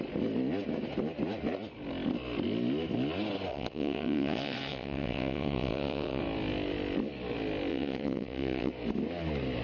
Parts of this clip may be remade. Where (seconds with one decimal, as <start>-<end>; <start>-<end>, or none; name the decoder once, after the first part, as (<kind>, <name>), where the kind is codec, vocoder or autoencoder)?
3.5-6.2 (vocoder, WaveNeXt); 7.7-8.7